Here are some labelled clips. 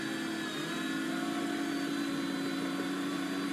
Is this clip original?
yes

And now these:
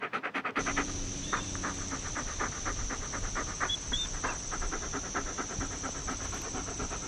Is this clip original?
no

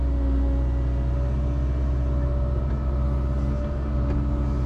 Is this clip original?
yes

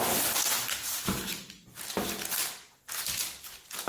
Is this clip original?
yes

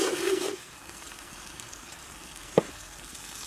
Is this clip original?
no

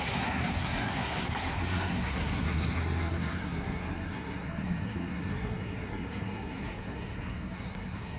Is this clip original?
no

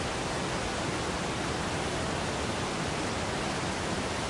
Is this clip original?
yes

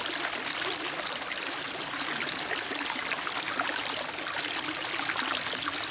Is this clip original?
yes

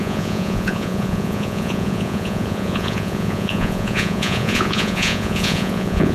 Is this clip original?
no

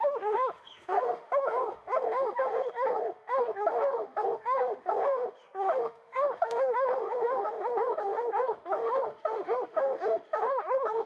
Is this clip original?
no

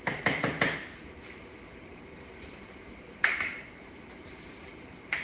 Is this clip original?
no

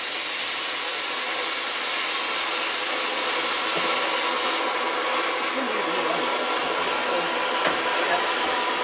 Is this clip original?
yes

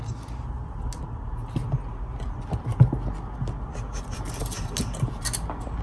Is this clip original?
yes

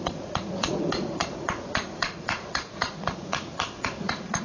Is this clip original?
no